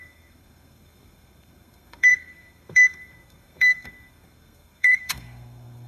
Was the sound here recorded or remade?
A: remade